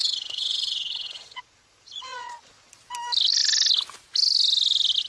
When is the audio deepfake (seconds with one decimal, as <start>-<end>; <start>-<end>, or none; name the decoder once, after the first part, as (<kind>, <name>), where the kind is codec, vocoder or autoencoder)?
0.0-2.7 (vocoder, Vocos)